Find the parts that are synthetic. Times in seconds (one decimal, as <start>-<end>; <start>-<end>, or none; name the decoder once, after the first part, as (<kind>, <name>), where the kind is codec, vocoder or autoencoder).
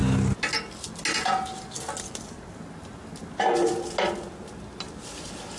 none